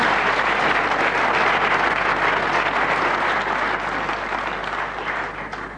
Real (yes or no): yes